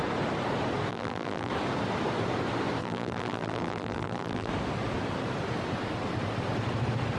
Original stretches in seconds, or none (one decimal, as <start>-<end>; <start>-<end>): 0.0-0.9; 1.5-2.8; 4.5-7.2